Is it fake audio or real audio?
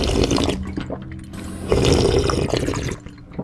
real